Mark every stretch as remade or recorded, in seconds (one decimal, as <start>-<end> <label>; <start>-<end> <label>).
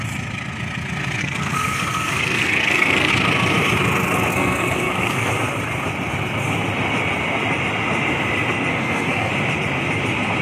0.0-1.2 recorded; 1.2-3.1 remade; 3.1-4.3 recorded; 4.3-5.3 remade; 5.3-8.7 recorded; 8.7-9.3 remade; 9.3-10.4 recorded